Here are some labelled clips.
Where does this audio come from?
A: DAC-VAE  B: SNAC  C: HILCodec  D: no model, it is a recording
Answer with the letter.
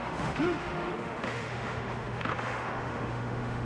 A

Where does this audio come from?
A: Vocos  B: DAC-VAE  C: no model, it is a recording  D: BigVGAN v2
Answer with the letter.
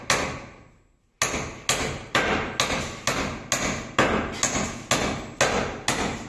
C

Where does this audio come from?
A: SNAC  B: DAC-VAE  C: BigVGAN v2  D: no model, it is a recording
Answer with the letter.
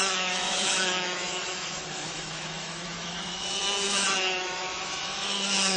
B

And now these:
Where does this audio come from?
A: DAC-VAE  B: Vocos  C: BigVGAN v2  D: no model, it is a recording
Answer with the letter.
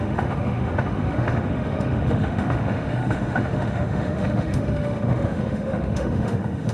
A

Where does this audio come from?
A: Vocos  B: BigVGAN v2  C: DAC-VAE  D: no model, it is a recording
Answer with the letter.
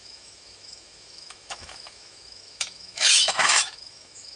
C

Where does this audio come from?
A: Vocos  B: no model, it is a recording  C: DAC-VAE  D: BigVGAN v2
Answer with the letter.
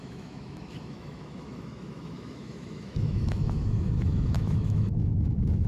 C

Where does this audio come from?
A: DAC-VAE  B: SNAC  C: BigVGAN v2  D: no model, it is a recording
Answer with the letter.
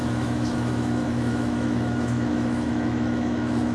A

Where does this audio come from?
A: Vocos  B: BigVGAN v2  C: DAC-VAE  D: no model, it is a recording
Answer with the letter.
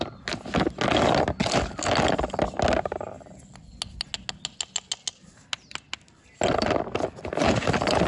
D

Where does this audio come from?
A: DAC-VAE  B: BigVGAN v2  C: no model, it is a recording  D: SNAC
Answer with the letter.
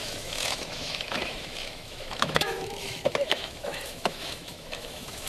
A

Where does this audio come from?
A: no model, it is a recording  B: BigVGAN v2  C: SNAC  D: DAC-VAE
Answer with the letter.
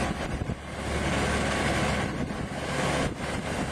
A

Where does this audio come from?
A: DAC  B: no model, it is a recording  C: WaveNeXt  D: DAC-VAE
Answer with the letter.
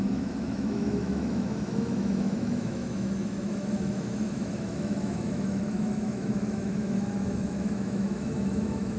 D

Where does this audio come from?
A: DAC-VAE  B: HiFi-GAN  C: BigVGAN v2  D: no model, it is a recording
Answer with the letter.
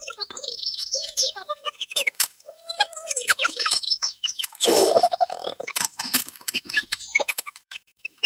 A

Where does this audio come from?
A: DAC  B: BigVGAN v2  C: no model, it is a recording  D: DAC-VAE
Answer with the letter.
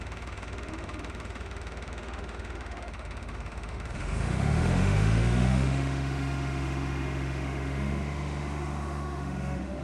D